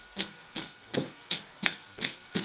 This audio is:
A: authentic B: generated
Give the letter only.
B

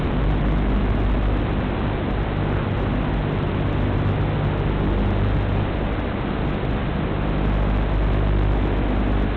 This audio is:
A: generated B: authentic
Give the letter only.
B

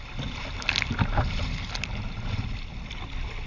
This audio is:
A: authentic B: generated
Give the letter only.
A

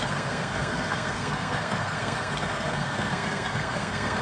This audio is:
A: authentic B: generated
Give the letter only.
B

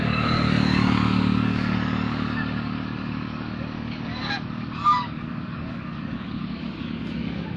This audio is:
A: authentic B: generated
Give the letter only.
B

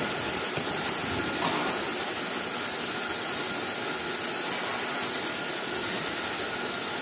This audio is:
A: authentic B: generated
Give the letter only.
A